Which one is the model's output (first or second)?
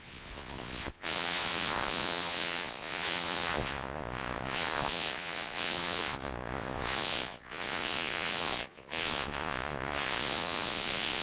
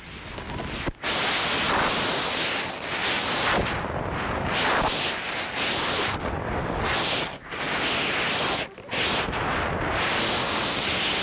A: first